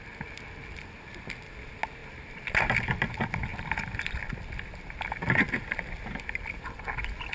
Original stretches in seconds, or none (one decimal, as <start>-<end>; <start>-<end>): 0.0-7.3